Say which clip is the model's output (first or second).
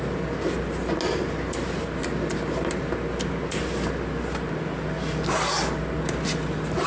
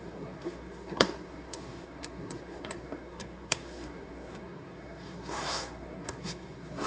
second